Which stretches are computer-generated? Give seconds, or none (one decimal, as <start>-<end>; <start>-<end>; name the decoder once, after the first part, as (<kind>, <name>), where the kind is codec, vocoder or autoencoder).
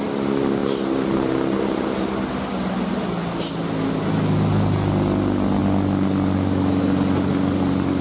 none